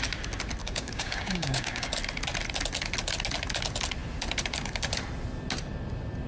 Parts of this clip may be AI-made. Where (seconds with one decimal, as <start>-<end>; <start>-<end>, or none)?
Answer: 0.6-1.9